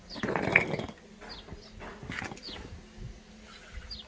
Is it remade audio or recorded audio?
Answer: recorded